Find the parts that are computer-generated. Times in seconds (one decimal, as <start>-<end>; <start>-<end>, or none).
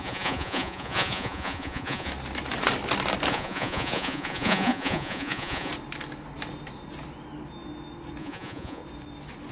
0.0-2.1; 3.3-5.7; 8.2-8.8